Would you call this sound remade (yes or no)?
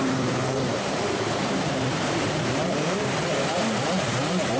yes